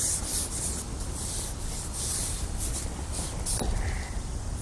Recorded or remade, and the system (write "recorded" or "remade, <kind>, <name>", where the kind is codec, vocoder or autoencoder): recorded